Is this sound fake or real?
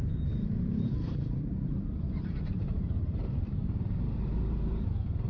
fake